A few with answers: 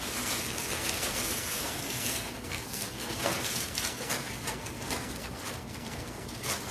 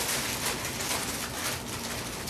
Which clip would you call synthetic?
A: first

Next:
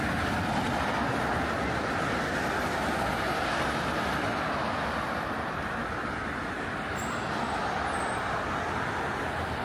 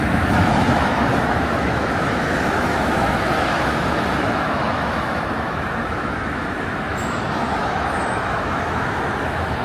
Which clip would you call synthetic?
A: second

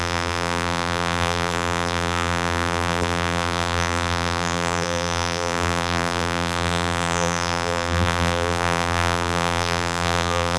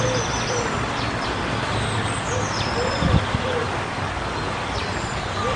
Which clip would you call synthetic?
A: first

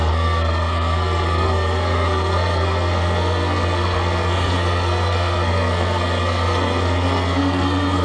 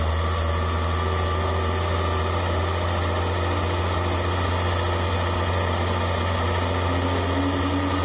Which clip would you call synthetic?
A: first